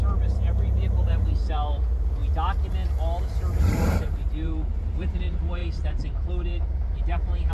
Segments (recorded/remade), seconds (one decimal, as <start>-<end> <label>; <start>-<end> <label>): 0.0-2.2 remade; 2.2-3.2 recorded; 3.2-7.5 remade